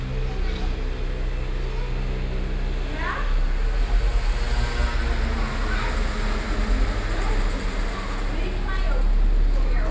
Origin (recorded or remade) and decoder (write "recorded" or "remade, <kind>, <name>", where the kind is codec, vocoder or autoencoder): recorded